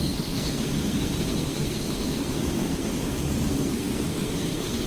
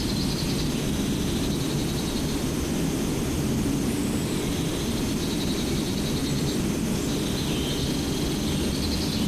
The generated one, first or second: first